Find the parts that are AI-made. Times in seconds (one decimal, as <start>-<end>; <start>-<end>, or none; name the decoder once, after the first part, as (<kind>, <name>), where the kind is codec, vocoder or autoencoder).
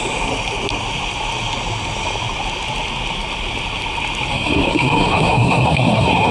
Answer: 4.3-6.3 (codec, SNAC)